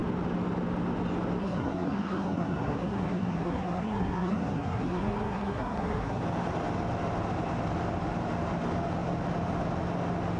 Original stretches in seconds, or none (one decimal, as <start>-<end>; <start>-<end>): 0.0-1.4; 6.2-10.4